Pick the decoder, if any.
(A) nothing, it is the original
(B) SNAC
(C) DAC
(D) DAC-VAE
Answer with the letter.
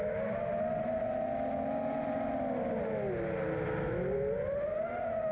A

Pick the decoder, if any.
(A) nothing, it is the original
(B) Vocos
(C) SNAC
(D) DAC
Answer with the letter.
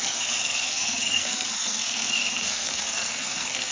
C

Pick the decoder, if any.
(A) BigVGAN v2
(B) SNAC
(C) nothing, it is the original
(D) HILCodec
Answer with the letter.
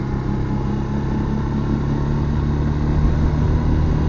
C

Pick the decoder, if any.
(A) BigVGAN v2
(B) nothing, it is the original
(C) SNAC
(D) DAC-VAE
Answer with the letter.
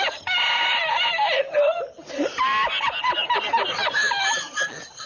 B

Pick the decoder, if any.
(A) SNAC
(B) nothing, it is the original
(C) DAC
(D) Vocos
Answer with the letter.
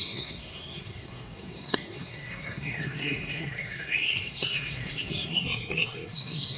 A